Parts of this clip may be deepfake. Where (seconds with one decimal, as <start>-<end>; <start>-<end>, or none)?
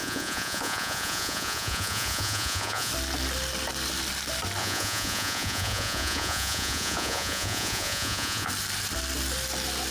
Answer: 0.0-2.9; 4.6-8.5